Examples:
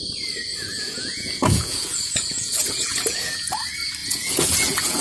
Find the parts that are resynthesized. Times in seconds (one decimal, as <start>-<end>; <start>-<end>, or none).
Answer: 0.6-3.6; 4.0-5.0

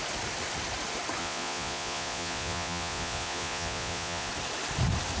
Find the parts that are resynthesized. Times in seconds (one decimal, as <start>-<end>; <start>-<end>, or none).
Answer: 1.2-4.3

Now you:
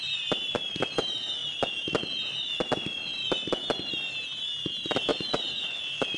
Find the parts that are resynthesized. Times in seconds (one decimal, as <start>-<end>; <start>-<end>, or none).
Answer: 5.1-5.8

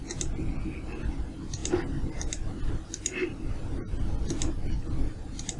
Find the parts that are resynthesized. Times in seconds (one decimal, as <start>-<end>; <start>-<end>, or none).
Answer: none